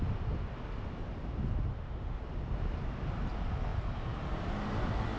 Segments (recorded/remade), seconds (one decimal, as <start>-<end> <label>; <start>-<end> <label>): 0.0-1.7 recorded; 1.7-2.2 remade; 2.2-5.2 recorded